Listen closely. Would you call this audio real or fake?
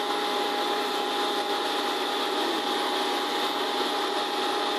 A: real